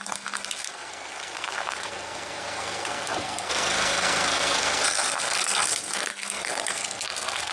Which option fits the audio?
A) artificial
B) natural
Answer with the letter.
A